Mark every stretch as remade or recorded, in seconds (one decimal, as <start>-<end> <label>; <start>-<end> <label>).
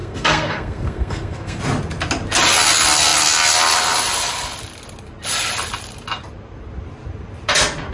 0.0-1.6 remade; 1.6-7.9 recorded